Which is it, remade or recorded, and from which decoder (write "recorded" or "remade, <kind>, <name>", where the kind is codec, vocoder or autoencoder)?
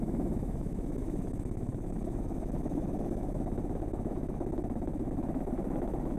remade, autoencoder, DAC-VAE